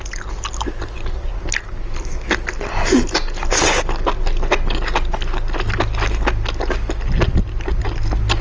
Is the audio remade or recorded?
recorded